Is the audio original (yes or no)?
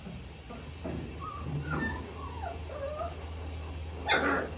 yes